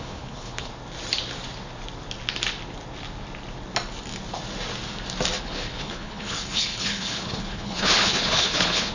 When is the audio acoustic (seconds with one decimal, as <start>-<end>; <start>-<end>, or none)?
0.7-5.4